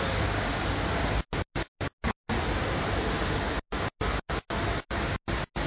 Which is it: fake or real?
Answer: real